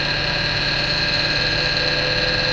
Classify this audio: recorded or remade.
recorded